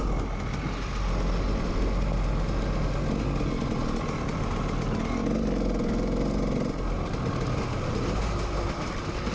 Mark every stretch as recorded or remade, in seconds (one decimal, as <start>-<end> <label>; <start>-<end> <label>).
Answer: 0.0-9.3 recorded